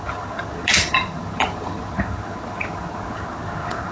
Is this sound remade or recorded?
remade